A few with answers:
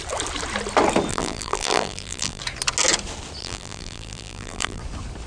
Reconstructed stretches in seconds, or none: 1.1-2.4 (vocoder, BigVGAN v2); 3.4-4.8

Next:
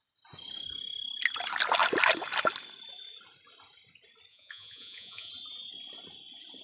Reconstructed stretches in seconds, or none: 4.3-5.3 (vocoder, Vocos)

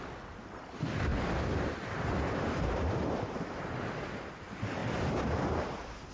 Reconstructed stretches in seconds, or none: 1.1-3.5 (vocoder, BigVGAN v2); 4.8-6.1

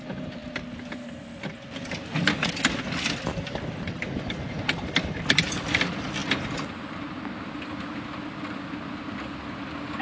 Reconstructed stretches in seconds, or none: none

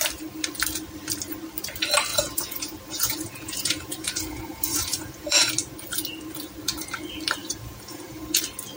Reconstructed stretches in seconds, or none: 2.1-5.5 (vocoder, Vocos); 7.4-8.4

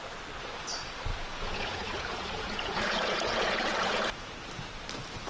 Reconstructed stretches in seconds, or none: 1.1-4.3 (vocoder, Vocos)

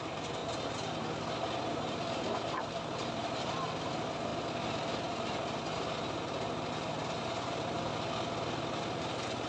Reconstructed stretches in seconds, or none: 0.0-0.4 (vocoder, BigVGAN v2); 1.7-4.3; 6.7-7.9

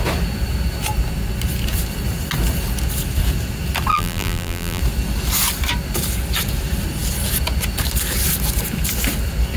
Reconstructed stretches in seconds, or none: 3.9-4.8 (vocoder, BigVGAN v2)